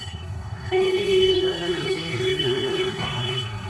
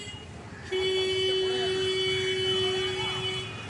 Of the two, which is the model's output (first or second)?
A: first